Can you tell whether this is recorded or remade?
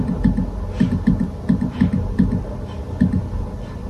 recorded